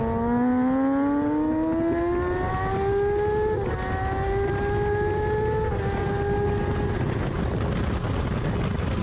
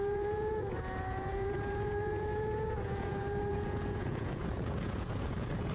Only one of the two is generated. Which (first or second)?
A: second